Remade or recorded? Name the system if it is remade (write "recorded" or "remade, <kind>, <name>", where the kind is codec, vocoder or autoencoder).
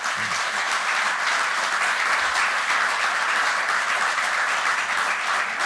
recorded